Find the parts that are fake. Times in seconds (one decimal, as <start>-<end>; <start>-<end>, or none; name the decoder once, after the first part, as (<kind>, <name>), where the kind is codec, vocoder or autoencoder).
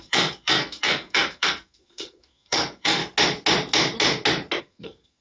0.0-3.0 (codec, SNAC); 4.6-5.2